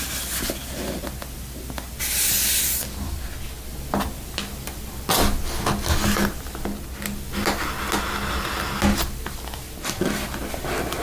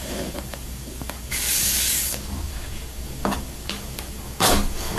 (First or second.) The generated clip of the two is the second